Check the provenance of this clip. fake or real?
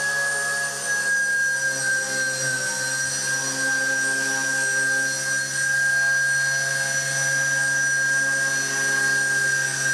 real